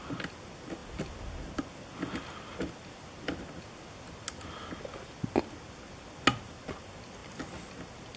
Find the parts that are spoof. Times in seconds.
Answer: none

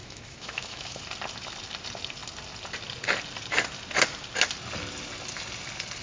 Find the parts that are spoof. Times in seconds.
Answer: 0.0-1.0 (autoencoder, DAC-VAE)

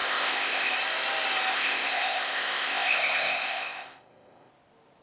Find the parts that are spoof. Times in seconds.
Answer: 0.0-0.7 (codec, ZipCodec); 1.5-4.5

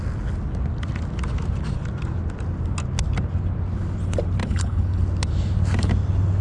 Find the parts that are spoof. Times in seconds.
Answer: 4.4-5.0 (codec, HILCodec)

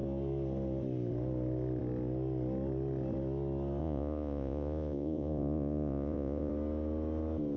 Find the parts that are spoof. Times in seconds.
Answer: 3.8-6.5 (vocoder, Vocos)

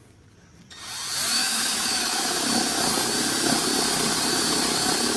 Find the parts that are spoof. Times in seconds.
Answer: 1.4-2.9 (autoencoder, DAC-VAE)